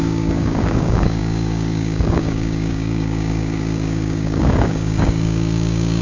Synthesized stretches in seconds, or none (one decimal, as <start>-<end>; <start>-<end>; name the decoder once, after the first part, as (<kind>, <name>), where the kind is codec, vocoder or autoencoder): 0.0-6.0 (codec, DAC)